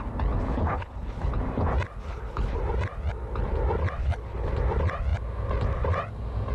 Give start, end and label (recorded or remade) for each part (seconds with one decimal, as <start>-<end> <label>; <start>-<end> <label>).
0.0-0.4 recorded; 0.4-1.3 remade; 1.3-2.0 recorded; 2.0-2.6 remade; 2.6-4.0 recorded; 4.0-4.5 remade; 4.5-6.5 recorded